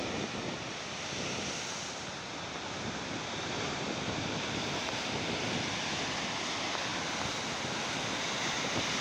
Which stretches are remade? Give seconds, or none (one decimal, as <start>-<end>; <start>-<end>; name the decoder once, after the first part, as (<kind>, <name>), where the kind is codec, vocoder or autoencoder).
none